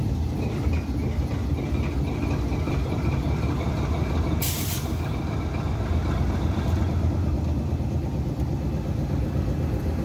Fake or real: real